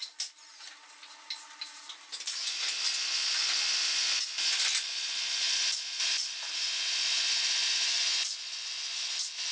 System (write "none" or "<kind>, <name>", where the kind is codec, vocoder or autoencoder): none